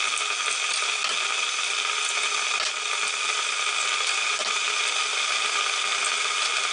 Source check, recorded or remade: recorded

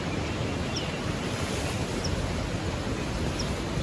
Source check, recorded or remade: recorded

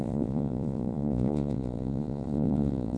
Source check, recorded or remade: remade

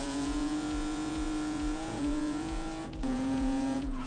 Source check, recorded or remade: remade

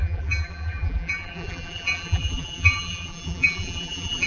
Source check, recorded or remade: remade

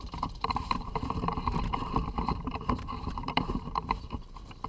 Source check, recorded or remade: remade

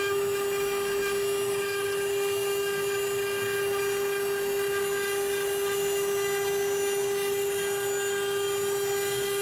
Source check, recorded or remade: recorded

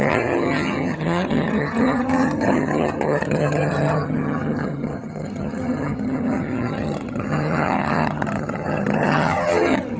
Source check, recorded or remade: remade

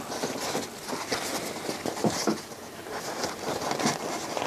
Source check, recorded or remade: recorded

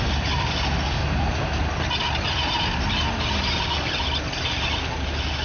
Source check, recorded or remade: recorded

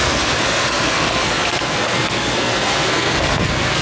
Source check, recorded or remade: remade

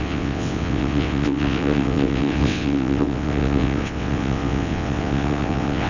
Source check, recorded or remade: remade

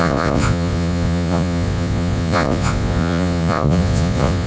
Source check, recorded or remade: remade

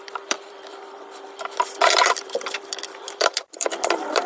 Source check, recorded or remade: remade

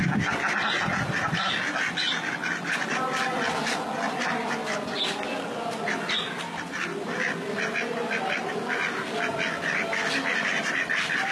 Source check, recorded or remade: recorded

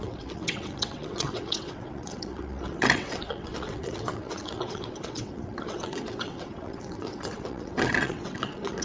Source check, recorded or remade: remade